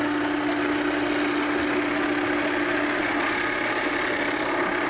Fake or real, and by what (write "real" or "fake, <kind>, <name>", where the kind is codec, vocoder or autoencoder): real